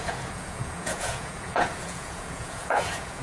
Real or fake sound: fake